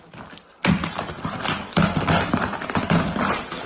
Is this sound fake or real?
real